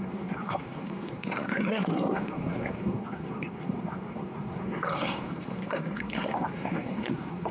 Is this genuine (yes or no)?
no